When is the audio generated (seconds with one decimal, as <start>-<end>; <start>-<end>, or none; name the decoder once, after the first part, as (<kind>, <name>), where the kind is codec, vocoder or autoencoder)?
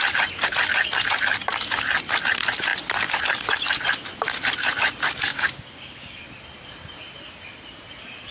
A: 5.3-6.2 (codec, DAC)